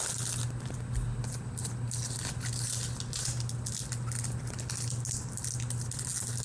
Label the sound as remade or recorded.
recorded